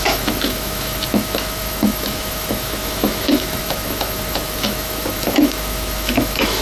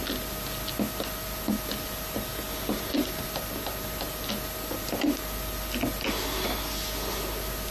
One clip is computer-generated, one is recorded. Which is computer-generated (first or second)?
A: first